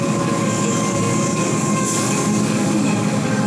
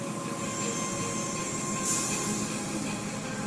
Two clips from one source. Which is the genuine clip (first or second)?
second